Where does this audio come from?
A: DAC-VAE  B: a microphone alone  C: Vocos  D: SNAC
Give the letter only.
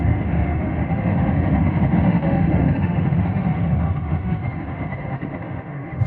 A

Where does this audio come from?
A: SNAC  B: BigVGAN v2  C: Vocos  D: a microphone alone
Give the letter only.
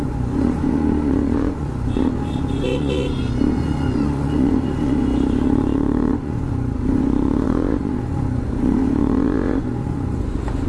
C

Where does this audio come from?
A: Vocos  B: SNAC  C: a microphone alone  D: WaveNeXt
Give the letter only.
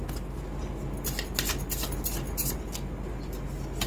C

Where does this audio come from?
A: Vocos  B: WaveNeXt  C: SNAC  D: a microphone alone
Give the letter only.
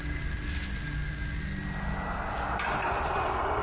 D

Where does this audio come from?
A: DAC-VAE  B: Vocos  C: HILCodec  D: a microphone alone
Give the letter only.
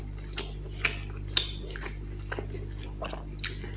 D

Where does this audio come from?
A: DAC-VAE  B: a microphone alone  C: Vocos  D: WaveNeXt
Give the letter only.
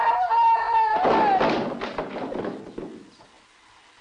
B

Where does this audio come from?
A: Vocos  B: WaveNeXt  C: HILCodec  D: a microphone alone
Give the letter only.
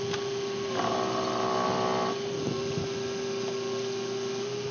D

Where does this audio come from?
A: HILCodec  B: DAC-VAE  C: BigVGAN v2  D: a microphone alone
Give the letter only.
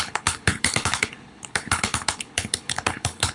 A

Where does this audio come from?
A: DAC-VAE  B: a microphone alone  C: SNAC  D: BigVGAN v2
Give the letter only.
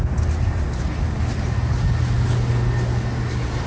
B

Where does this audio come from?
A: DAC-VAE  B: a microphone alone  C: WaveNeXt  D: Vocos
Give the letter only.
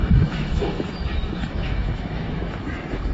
A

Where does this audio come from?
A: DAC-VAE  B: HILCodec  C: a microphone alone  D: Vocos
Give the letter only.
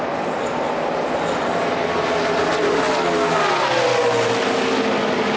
C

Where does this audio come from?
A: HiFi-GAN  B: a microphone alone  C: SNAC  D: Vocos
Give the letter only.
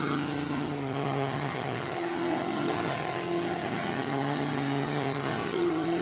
A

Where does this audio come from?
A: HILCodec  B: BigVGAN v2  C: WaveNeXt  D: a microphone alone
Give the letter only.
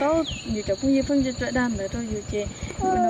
D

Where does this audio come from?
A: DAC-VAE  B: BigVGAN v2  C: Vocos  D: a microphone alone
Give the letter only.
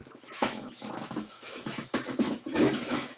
A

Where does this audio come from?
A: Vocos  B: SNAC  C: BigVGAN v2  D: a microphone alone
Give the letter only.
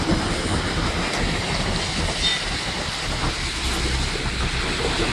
D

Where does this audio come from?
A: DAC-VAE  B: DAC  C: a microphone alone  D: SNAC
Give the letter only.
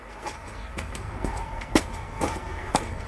D